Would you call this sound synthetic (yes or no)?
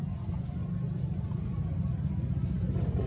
no